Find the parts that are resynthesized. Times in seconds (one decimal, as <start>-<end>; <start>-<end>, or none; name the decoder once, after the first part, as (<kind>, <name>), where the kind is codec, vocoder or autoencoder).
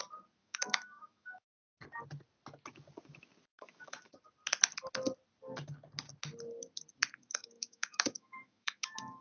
0.4-1.5 (autoencoder, DAC-VAE); 3.5-4.1; 7.2-9.2